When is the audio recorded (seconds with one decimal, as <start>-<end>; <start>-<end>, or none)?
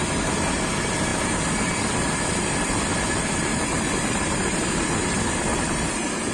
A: 0.0-3.5; 4.7-5.5